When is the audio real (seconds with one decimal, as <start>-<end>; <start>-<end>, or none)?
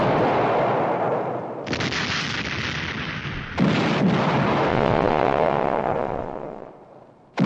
0.0-4.7; 6.7-7.5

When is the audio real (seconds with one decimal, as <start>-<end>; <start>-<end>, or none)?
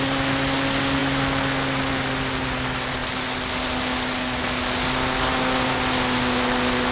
0.0-6.9